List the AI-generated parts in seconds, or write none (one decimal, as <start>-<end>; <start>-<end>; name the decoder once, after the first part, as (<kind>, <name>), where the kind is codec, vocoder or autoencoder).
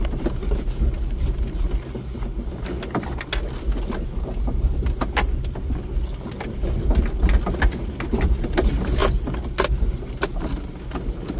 none